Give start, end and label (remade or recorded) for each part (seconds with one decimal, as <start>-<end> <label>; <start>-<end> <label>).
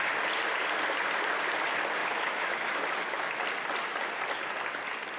0.0-2.0 recorded; 2.0-3.3 remade; 3.3-5.2 recorded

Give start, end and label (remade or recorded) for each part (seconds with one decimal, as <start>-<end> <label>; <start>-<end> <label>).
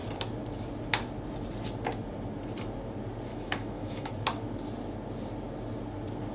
0.0-3.3 recorded; 3.3-4.1 remade; 4.1-6.3 recorded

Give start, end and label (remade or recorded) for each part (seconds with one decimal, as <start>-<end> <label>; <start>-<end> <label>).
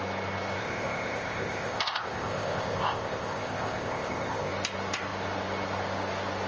0.0-0.6 recorded; 0.6-4.5 remade; 4.5-6.5 recorded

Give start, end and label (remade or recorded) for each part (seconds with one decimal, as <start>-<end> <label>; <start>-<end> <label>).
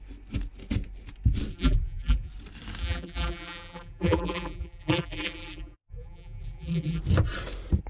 0.0-1.5 recorded; 1.5-2.3 remade; 2.3-2.8 recorded; 2.8-7.0 remade; 7.0-7.9 recorded